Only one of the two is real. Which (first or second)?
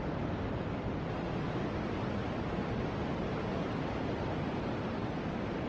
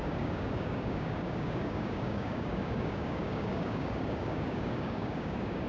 first